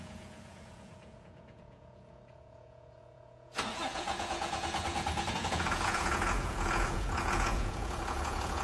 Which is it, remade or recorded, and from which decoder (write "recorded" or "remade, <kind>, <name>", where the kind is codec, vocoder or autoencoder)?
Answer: remade, vocoder, Vocos